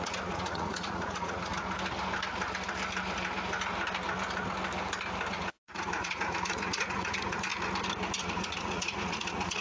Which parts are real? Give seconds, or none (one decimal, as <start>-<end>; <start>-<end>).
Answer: 1.5-5.3; 7.5-8.2